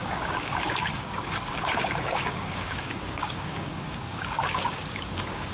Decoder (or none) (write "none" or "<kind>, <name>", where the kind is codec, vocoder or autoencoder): codec, DAC